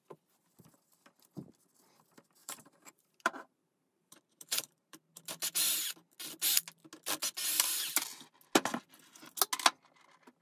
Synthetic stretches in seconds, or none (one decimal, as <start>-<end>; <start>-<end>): 2.4-5.3